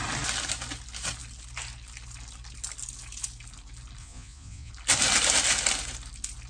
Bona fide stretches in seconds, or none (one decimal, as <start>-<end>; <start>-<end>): 0.0-4.0; 4.7-6.5